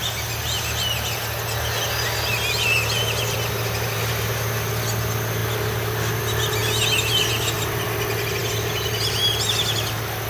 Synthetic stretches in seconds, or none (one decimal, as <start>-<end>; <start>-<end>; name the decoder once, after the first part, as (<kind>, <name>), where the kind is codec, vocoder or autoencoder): none